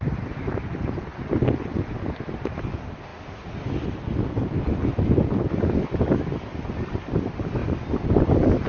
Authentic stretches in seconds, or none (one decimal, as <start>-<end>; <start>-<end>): 0.0-8.7